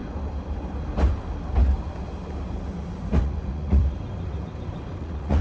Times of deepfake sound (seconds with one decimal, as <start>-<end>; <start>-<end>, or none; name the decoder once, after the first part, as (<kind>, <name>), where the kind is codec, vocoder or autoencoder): 3.2-3.8 (vocoder, Vocos); 5.0-5.4